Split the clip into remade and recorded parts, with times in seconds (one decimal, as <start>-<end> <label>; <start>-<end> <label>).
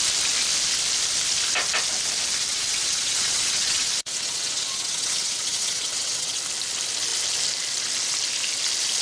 0.0-2.5 recorded; 2.5-6.4 remade; 6.4-9.0 recorded